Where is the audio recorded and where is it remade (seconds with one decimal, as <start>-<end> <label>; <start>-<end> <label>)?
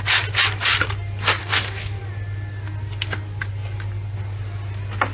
0.0-1.4 recorded; 1.4-2.0 remade; 2.0-5.1 recorded